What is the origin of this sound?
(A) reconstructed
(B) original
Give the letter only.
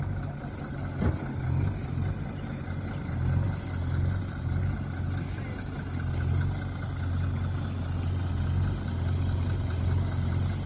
B